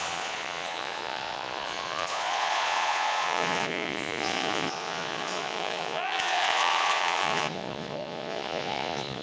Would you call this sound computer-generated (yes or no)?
yes